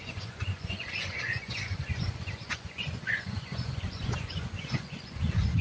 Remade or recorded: remade